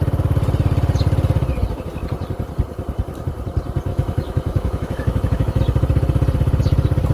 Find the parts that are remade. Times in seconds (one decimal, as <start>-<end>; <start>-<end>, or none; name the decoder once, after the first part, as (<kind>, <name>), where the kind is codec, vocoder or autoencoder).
3.9-5.6 (autoencoder, DAC-VAE)